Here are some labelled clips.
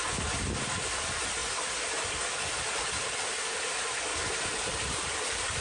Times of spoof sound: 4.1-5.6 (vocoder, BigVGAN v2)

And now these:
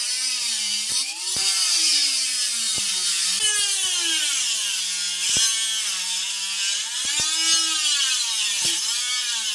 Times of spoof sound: 0.0-3.0 (vocoder, BigVGAN v2); 8.0-9.5

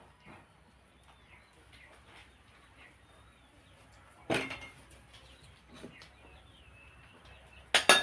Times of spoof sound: 2.2-6.1 (vocoder, BigVGAN v2)

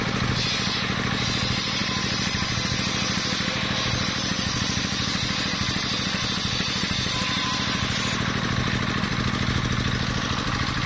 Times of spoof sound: none